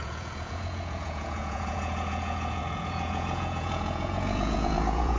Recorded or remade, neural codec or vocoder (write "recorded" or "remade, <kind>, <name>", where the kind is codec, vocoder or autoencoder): remade, vocoder, Vocos